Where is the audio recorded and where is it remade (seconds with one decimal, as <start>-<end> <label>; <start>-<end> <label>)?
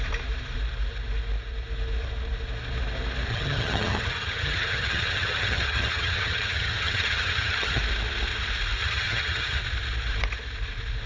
0.0-3.3 recorded; 3.3-7.8 remade; 7.8-8.8 recorded; 8.8-9.6 remade; 9.6-11.1 recorded